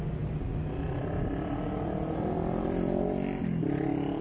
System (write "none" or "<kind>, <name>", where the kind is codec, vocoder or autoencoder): none